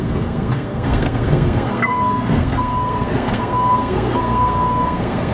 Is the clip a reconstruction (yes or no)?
yes